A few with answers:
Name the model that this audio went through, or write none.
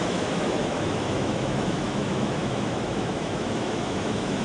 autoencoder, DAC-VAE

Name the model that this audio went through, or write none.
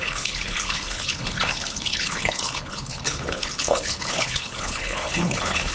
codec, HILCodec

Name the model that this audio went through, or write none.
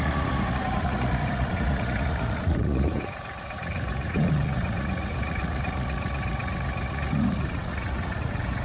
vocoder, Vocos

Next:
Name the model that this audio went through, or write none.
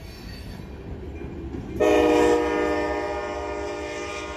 none